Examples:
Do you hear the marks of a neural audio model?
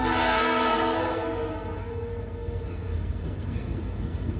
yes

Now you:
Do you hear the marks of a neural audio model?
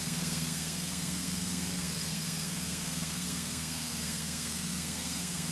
yes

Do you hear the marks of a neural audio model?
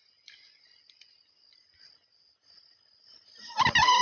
no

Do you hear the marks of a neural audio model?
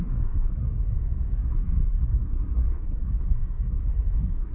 yes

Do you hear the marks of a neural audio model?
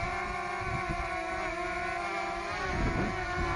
no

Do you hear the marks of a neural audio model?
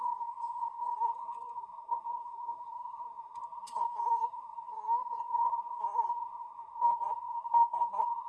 yes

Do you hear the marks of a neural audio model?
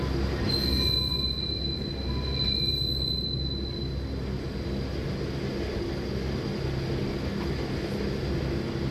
no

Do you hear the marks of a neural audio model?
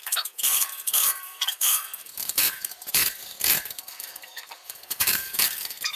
yes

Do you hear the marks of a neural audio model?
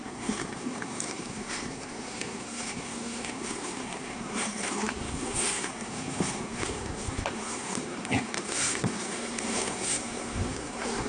yes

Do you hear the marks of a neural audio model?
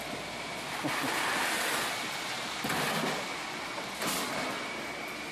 no